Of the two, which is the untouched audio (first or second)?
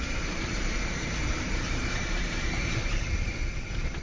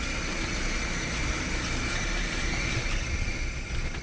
second